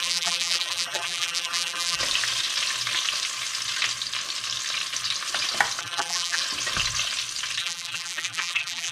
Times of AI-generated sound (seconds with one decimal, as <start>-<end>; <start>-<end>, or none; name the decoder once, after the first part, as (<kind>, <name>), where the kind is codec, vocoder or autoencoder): 0.0-2.0 (vocoder, BigVGAN v2); 5.8-6.4; 7.6-8.9